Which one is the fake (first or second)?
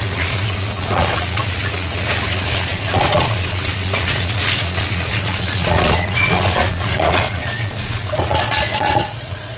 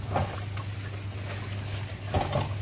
first